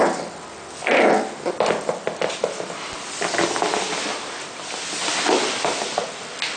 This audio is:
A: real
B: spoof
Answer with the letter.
A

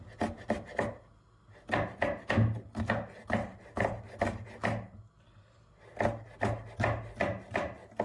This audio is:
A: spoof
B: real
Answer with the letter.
B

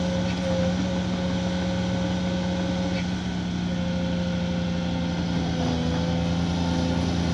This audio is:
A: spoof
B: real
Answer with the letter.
B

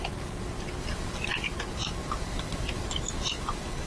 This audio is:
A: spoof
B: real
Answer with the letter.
B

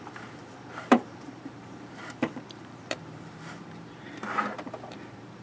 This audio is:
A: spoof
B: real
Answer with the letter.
A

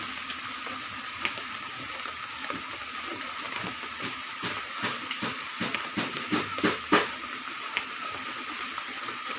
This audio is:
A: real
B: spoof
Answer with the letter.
A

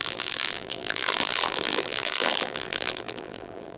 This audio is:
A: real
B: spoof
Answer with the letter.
B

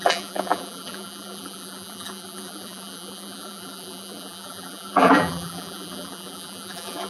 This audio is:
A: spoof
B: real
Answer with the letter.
A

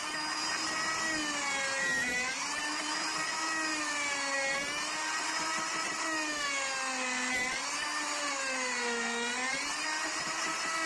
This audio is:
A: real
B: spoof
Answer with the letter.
A